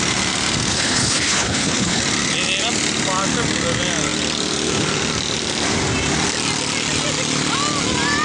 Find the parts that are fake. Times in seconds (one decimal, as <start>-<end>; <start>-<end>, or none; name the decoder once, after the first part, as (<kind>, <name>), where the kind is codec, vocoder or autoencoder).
0.7-2.0 (codec, HILCodec)